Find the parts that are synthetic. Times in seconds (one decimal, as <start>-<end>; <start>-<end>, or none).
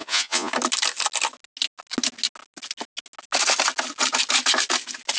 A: 0.0-0.5